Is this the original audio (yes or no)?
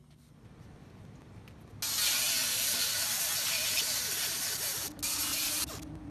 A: yes